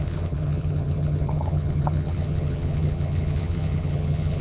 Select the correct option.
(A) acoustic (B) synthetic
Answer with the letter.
B